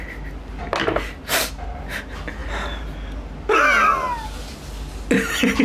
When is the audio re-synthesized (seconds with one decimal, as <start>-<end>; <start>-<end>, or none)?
none